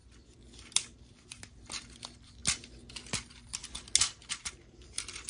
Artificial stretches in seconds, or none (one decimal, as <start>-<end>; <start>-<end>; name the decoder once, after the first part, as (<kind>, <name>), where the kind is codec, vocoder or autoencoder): 1.8-2.4 (vocoder, BigVGAN v2); 3.0-3.6; 4.5-5.3